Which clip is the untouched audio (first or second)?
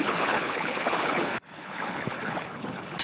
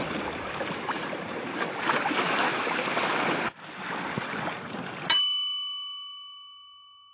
second